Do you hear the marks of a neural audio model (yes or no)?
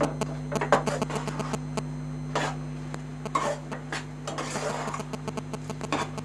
no